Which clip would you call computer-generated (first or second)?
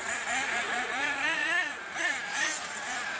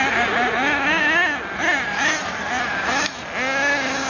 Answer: first